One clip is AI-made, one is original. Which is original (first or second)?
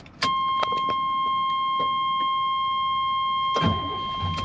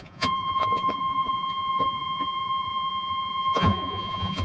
first